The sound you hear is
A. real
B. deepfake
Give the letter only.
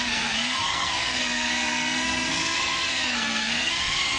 B